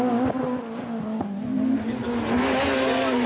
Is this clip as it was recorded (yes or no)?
yes